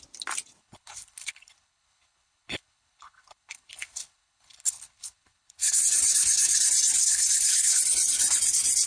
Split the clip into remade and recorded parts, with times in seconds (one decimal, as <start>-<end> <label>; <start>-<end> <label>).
0.0-0.6 recorded; 0.6-5.8 remade; 5.8-7.0 recorded; 7.0-7.8 remade; 7.8-8.9 recorded